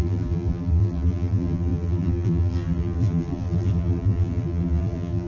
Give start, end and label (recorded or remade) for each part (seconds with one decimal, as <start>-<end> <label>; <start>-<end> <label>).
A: 0.0-5.3 remade